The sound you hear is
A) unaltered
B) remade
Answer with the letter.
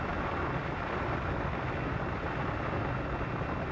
A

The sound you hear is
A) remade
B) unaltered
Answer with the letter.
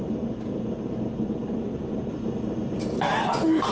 A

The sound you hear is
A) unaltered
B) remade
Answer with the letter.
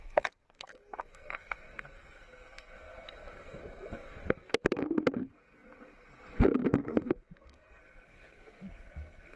B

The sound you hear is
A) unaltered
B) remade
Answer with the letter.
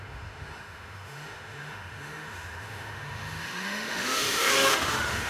B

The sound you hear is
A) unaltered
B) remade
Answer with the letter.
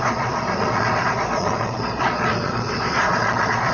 B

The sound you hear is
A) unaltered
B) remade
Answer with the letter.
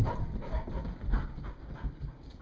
A